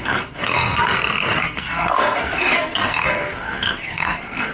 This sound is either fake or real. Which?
fake